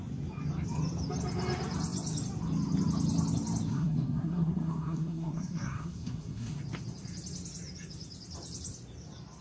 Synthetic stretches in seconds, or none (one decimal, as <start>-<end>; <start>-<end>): 3.7-6.6